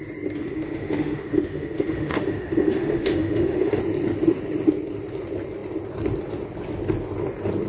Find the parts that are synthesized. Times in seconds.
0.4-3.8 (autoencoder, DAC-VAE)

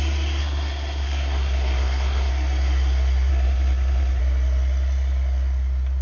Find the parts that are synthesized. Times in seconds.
0.4-2.3 (codec, SNAC); 3.3-4.2

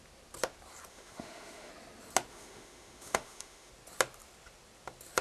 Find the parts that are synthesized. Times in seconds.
0.9-1.7 (autoencoder, DAC-VAE); 2.3-3.7

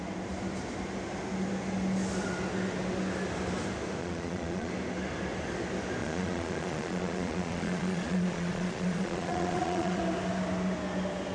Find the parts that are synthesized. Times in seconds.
4.0-4.7 (vocoder, Vocos); 6.0-10.0

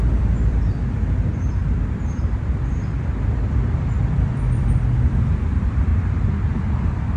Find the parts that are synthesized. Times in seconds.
0.0-5.9 (vocoder, BigVGAN v2)

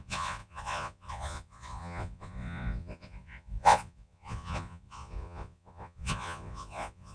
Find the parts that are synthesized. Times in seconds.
0.0-7.1 (vocoder, Vocos)